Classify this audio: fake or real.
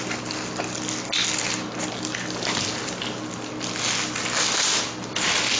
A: real